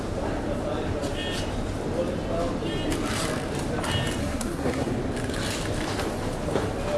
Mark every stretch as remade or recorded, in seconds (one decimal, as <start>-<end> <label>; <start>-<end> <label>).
0.0-4.2 recorded; 4.2-4.9 remade; 4.9-7.0 recorded